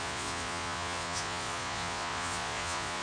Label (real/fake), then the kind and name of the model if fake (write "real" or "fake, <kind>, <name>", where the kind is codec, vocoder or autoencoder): fake, vocoder, Vocos